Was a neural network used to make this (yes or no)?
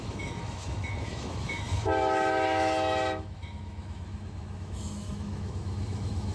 yes